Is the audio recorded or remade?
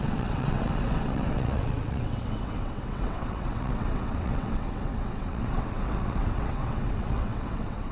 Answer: remade